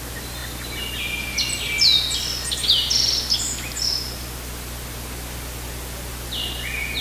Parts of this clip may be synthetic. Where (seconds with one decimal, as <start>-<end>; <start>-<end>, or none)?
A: none